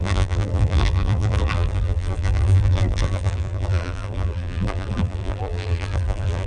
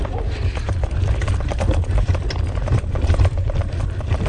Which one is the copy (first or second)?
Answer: first